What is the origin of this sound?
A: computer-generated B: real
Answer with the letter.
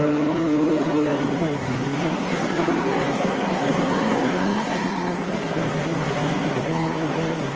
A